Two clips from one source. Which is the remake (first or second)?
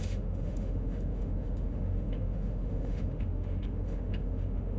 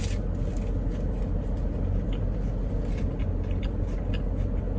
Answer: first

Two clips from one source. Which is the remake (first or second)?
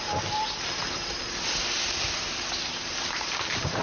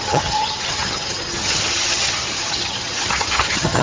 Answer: second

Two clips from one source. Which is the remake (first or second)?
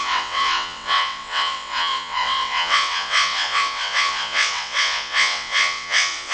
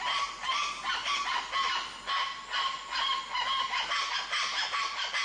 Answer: first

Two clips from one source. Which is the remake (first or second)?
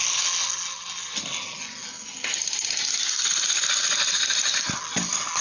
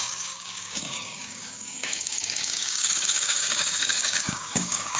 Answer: second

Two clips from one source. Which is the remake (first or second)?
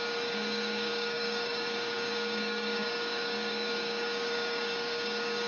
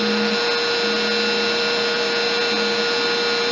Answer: first